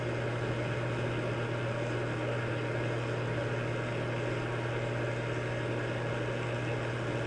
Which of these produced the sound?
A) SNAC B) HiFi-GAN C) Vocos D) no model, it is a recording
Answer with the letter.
D